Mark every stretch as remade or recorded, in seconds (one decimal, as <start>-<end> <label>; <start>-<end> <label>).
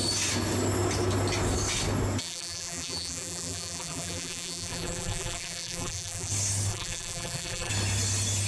0.0-2.2 recorded; 2.2-6.3 remade; 6.3-6.7 recorded; 6.7-7.7 remade; 7.7-8.5 recorded